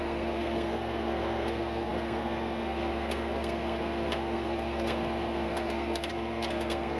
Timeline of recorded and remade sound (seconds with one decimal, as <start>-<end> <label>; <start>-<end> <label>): 0.0-7.0 remade